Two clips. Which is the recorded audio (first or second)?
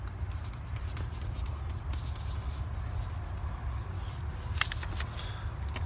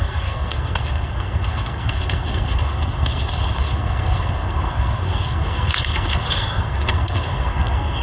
first